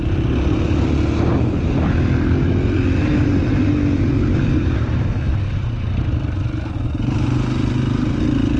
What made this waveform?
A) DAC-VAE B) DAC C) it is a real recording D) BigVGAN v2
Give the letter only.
C